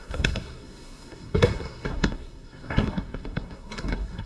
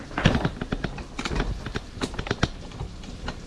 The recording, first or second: second